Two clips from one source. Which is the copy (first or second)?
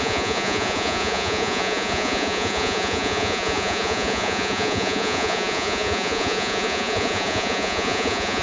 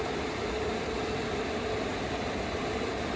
first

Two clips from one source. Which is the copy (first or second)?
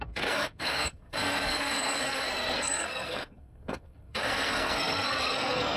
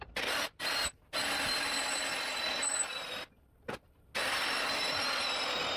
first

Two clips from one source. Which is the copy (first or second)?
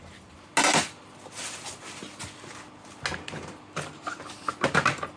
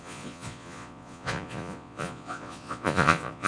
second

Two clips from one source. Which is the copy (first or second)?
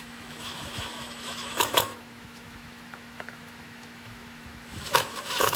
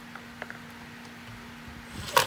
first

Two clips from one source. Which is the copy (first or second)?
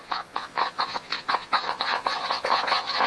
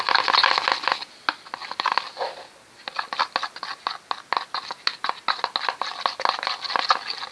first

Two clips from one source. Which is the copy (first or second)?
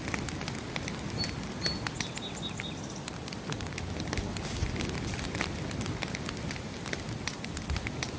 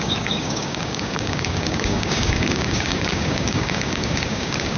second